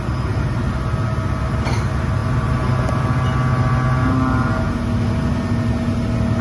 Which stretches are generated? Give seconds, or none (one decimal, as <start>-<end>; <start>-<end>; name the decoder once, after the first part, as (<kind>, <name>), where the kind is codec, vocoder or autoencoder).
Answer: none